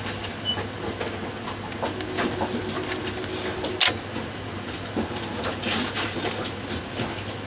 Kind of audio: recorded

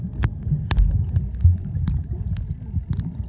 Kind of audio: recorded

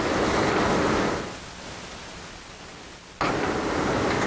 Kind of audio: recorded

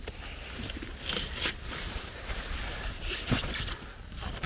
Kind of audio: remade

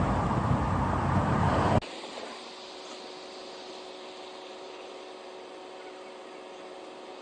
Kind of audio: recorded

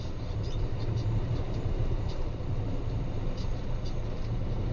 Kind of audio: remade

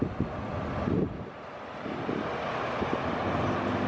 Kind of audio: recorded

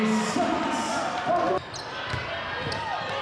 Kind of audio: recorded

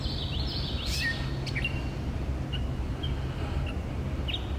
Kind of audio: recorded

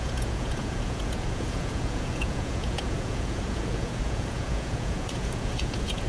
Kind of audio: remade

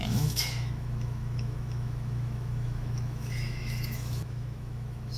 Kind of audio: remade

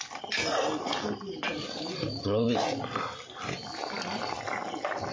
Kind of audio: recorded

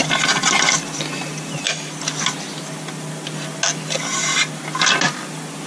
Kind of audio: recorded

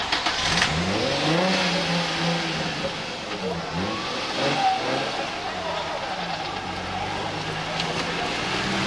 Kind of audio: recorded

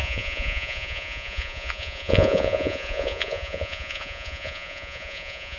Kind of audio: remade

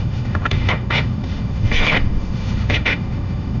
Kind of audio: remade